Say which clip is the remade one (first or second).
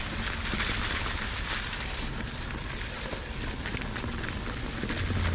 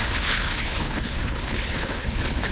second